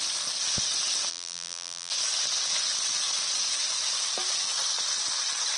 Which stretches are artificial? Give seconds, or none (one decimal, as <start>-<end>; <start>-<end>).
1.1-1.9